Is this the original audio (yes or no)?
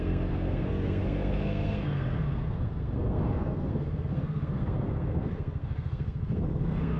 no